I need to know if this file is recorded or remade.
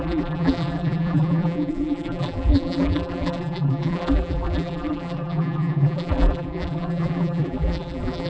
remade